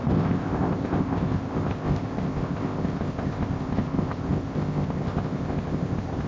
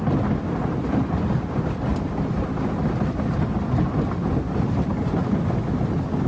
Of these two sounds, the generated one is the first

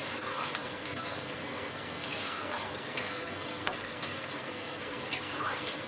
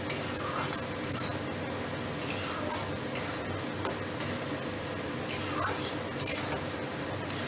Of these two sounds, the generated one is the first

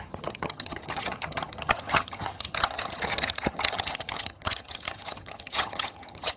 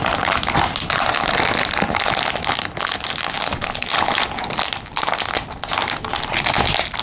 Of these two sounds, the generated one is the first